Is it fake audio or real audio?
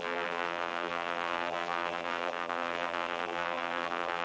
fake